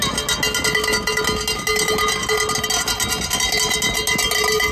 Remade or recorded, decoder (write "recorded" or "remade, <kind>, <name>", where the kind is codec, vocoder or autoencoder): recorded